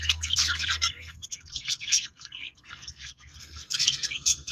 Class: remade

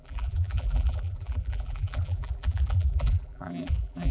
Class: remade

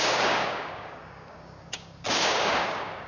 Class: remade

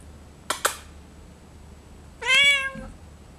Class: recorded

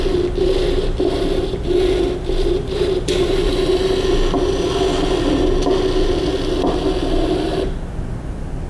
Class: recorded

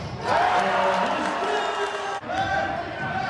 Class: recorded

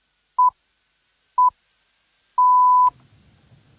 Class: recorded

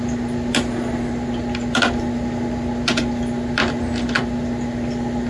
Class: recorded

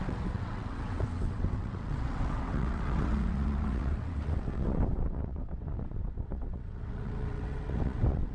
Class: remade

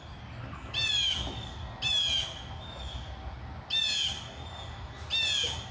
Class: recorded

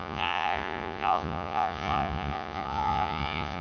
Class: remade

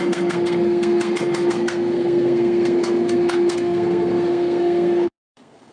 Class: remade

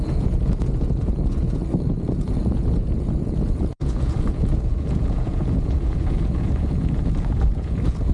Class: remade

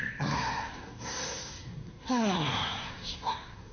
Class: remade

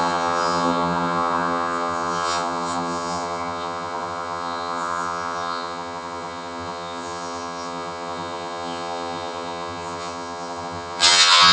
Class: remade